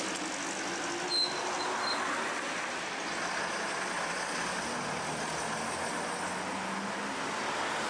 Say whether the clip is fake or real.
real